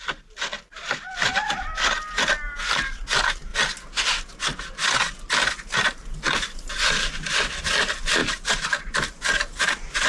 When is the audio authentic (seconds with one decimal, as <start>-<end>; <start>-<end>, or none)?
0.0-8.2; 8.8-10.1